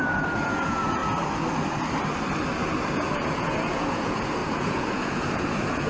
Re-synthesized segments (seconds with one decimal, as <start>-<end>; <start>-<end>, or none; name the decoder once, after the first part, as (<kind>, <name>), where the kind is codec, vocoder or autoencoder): 0.0-1.0 (vocoder, Vocos); 2.9-5.9

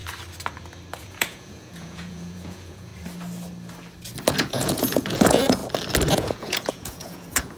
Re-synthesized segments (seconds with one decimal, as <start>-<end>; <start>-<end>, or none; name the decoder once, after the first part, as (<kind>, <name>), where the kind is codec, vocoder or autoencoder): 1.0-2.9 (vocoder, Vocos); 4.3-5.6; 6.1-7.6